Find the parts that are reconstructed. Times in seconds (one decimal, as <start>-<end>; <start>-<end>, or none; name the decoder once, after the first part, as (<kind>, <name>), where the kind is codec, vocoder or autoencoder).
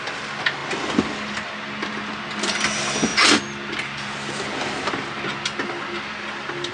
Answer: none